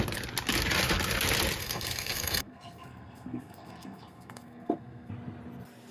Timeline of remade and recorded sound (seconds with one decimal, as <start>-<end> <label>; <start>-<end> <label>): 0.0-1.6 recorded; 1.6-5.1 remade; 5.1-5.9 recorded